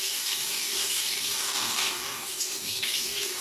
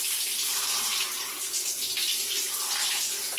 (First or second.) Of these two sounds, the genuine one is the second